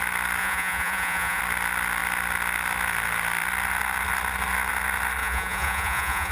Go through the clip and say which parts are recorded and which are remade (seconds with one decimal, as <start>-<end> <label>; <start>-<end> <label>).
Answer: 0.0-0.4 recorded; 0.4-1.4 remade; 1.4-5.2 recorded; 5.2-6.3 remade